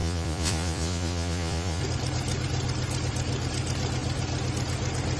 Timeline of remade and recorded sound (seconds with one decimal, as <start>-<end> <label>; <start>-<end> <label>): 0.0-1.8 remade; 1.8-5.2 recorded